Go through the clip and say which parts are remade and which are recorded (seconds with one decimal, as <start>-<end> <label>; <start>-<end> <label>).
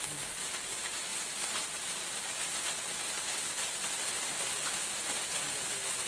0.0-6.1 recorded